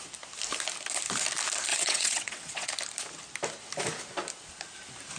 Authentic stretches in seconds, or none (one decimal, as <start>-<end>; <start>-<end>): 0.0-1.7; 2.7-5.2